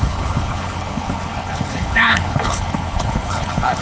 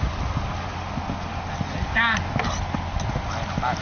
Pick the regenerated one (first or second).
first